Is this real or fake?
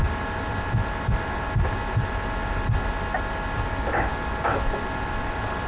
real